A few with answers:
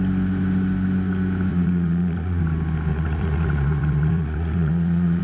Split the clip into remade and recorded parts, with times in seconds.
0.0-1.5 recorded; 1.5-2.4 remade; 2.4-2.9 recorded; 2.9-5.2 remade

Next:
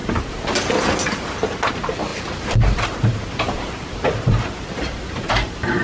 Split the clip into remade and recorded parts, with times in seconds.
0.0-0.7 remade; 0.7-2.1 recorded; 2.1-5.8 remade

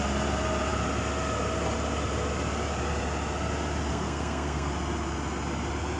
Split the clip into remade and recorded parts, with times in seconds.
0.0-3.9 recorded; 3.9-4.7 remade; 4.7-6.0 recorded

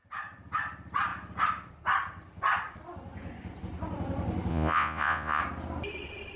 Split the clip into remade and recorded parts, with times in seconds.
0.0-4.5 recorded; 4.5-5.4 remade; 5.4-6.4 recorded

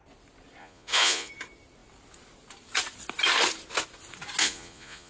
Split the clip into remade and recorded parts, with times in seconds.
0.0-0.6 recorded; 0.6-1.3 remade; 1.3-4.4 recorded; 4.4-5.1 remade

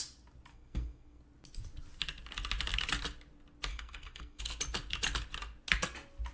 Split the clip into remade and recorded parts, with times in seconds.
0.0-0.5 recorded; 0.5-1.2 remade; 1.2-3.7 recorded; 3.7-4.4 remade; 4.4-6.3 recorded

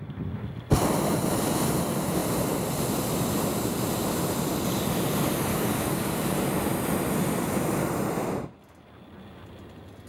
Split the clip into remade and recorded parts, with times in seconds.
0.0-5.5 recorded; 5.5-6.5 remade; 6.5-10.1 recorded